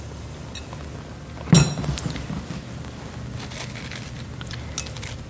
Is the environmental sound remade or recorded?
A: recorded